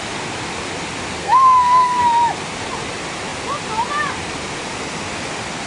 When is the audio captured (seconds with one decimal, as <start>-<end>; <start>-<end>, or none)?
0.0-1.2; 2.0-5.7